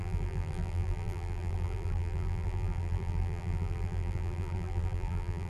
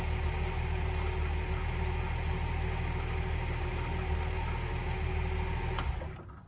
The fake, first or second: first